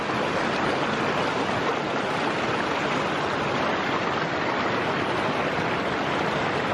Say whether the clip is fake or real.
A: real